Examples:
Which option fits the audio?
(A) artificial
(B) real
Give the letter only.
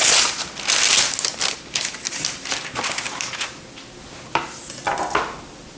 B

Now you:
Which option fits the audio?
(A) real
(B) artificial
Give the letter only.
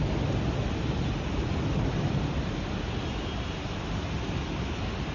A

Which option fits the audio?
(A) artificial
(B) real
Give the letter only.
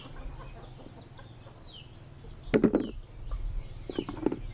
B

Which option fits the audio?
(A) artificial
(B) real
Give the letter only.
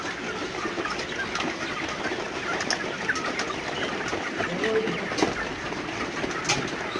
B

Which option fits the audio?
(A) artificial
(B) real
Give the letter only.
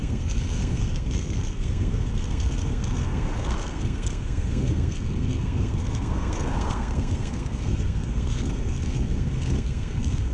A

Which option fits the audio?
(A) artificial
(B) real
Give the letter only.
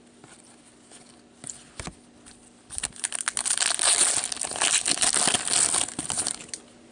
B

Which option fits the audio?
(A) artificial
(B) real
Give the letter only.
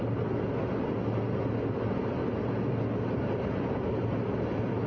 B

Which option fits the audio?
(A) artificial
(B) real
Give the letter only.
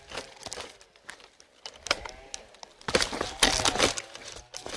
B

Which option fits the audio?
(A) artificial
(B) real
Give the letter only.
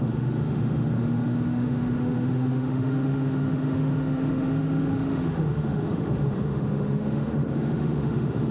A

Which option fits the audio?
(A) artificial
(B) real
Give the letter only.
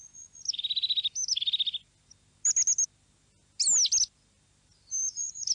B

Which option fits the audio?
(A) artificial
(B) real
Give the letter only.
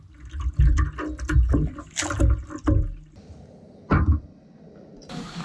B